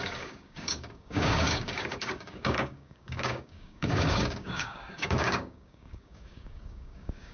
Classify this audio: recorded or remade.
remade